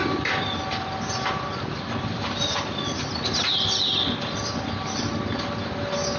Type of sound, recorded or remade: recorded